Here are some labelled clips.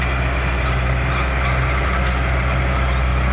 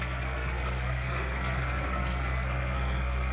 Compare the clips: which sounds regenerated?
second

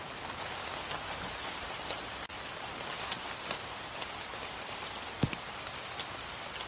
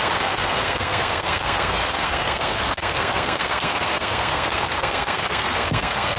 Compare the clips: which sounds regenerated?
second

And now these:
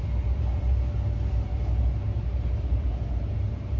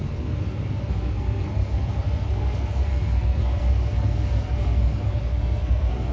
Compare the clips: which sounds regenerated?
second